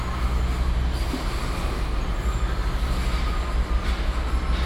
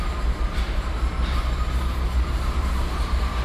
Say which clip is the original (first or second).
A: first